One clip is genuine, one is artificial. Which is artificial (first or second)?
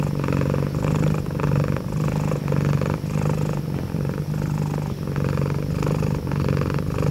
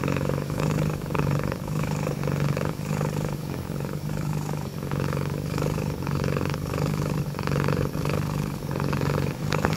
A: second